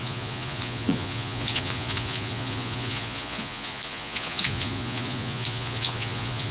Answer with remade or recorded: remade